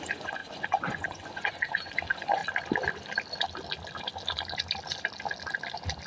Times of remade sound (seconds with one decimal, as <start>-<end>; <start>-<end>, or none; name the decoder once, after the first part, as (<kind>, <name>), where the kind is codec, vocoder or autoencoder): 0.0-2.4 (vocoder, Vocos)